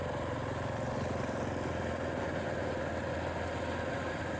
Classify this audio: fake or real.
real